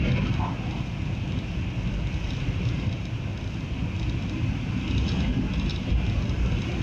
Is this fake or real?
real